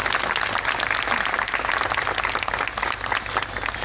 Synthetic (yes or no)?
no